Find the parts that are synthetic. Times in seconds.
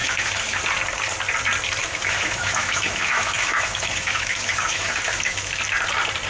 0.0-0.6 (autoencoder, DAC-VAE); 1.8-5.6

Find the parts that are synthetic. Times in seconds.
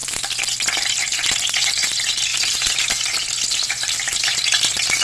none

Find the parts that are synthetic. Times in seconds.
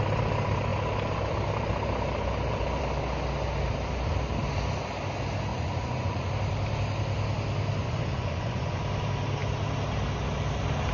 5.5-6.3 (vocoder, Vocos); 7.8-8.8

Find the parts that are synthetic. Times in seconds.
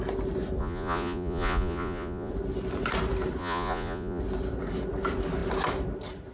0.6-2.3 (vocoder, Vocos); 3.4-4.2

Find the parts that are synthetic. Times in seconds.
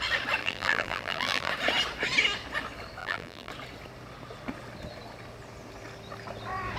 0.4-1.5 (vocoder, BigVGAN v2); 3.0-3.5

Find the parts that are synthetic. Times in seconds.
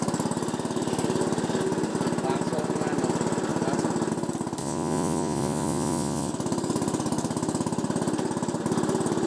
4.6-6.3 (vocoder, Vocos)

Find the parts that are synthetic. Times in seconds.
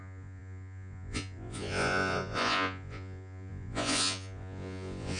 0.0-5.2 (vocoder, Vocos)